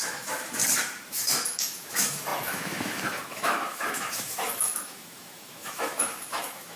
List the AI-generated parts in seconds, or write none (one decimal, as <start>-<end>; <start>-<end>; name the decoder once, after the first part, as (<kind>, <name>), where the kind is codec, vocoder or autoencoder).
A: 0.0-0.6 (autoencoder, DAC-VAE); 1.1-6.8